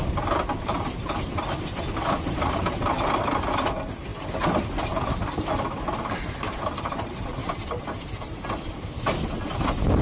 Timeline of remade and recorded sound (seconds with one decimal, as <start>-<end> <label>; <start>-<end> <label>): 0.0-10.0 recorded